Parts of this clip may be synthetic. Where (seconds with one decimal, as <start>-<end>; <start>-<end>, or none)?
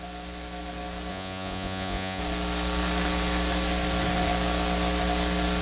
1.1-2.2